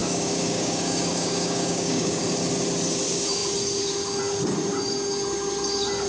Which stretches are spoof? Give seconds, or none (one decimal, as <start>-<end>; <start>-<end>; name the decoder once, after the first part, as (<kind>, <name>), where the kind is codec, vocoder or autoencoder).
0.0-2.2 (codec, DAC)